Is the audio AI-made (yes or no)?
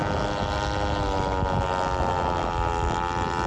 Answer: no